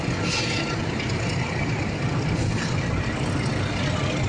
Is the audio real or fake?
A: real